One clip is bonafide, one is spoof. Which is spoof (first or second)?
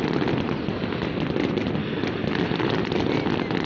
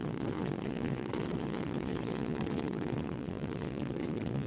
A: second